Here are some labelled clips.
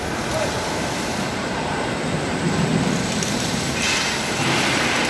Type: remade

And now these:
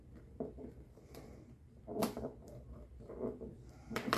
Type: remade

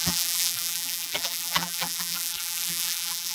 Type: remade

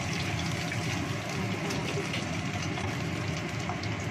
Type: recorded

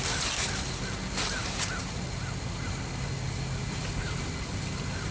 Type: recorded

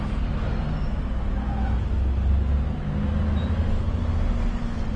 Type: recorded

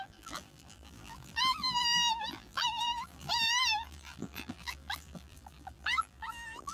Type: remade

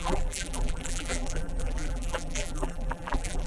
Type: remade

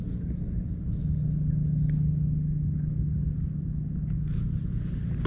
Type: recorded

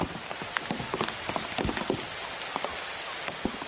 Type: recorded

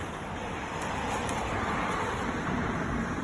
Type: remade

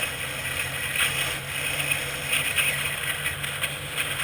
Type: recorded